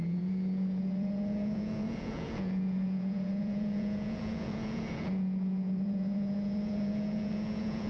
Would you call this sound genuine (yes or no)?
no